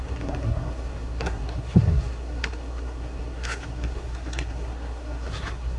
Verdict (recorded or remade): remade